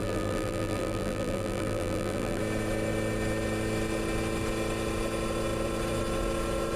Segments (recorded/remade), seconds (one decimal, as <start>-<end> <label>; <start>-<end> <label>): 0.0-2.4 remade; 2.4-6.8 recorded